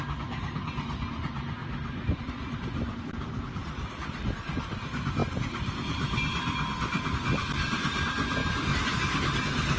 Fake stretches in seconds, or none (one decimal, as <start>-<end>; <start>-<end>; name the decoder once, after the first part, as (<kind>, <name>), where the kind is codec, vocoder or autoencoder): 0.0-8.4 (vocoder, BigVGAN v2); 9.4-9.8